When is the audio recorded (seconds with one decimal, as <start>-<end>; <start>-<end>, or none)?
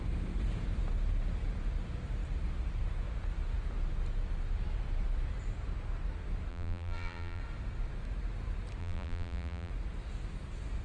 0.0-6.5; 7.4-8.8; 9.7-10.8